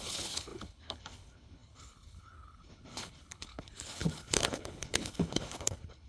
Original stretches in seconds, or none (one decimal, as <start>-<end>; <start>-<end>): none